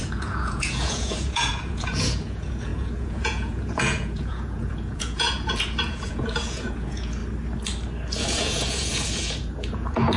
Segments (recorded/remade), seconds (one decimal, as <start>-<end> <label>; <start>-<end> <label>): 0.0-7.2 remade; 7.2-8.2 recorded; 8.2-10.2 remade

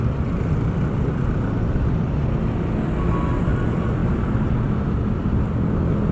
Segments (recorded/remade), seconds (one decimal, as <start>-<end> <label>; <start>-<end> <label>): 0.0-6.1 recorded